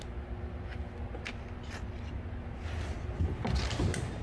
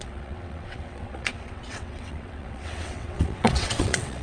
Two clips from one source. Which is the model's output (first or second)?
second